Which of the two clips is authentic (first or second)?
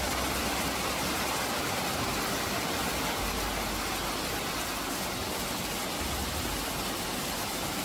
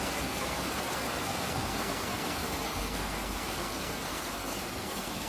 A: first